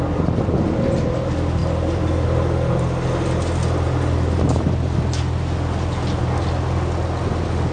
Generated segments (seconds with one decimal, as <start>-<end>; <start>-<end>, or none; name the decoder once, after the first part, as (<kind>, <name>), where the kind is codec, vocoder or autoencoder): none